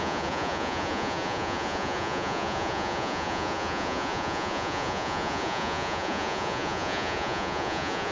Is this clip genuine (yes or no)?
no